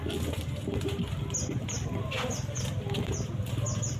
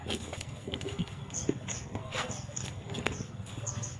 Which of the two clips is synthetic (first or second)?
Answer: second